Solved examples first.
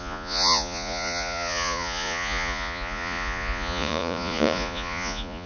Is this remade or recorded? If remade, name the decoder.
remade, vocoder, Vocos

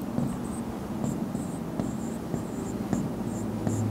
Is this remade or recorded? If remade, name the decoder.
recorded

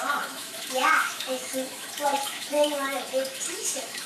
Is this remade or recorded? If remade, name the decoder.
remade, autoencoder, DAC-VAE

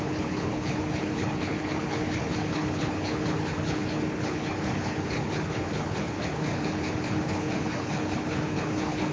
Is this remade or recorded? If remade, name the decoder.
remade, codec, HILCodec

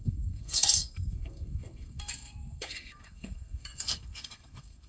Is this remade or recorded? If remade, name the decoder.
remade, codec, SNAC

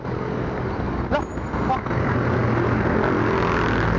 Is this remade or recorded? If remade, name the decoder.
recorded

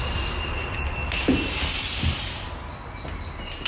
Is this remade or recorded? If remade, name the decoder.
recorded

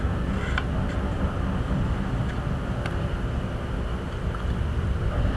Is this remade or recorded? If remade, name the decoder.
recorded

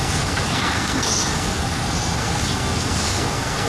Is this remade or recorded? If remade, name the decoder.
remade, codec, SNAC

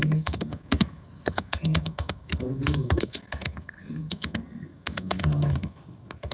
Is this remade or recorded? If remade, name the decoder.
remade, codec, SNAC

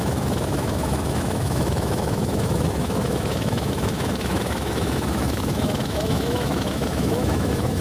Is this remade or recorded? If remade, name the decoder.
remade, autoencoder, DAC-VAE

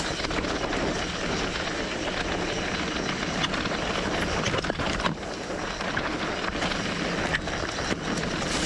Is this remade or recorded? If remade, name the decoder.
recorded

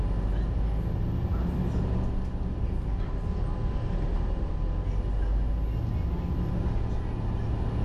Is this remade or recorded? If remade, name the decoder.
recorded